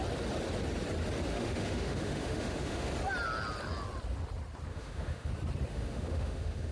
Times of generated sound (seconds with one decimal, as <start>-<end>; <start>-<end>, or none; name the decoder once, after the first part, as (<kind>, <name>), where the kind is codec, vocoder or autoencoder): 1.3-2.9 (autoencoder, DAC-VAE); 4.7-5.3; 5.7-6.7